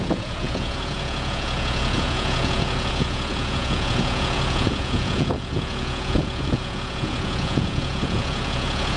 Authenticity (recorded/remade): remade